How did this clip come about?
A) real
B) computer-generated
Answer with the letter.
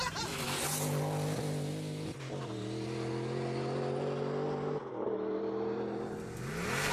A